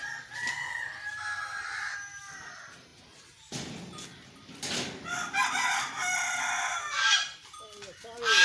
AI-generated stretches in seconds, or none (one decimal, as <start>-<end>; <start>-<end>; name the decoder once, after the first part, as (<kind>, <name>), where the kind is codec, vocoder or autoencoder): none

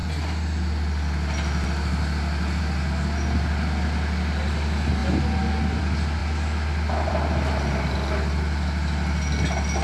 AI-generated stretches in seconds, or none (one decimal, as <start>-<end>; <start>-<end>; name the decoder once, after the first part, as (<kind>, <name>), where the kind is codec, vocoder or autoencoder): none

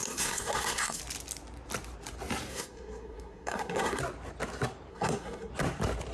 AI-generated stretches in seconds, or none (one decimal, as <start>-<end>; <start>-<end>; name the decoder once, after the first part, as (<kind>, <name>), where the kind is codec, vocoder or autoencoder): 0.0-1.0 (codec, SNAC); 2.5-4.0; 4.9-5.5

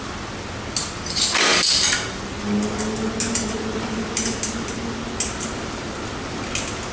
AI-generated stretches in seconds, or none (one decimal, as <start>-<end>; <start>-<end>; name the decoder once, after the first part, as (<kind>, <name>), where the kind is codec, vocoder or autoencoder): none

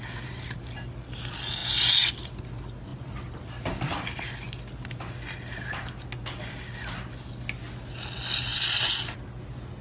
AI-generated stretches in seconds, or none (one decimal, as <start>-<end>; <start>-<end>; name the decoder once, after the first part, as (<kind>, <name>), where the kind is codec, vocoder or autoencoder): none

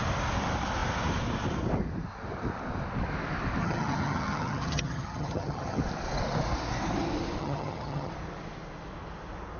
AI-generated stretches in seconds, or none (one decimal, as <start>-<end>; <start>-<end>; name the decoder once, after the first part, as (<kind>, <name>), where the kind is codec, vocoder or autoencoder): 3.6-5.8 (vocoder, HiFi-GAN); 7.4-8.1

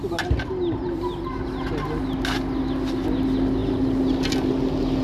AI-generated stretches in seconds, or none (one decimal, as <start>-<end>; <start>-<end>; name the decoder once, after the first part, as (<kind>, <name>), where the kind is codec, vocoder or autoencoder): none

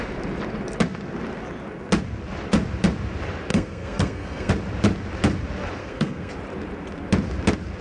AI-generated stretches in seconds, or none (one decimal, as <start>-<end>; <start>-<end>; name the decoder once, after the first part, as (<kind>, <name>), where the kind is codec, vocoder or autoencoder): 3.5-4.5 (codec, SNAC); 5.8-6.3